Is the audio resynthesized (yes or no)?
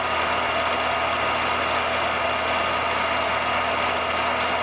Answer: no